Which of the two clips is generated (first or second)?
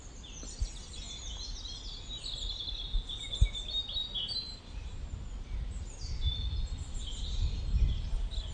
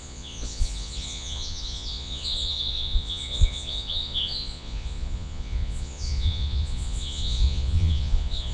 second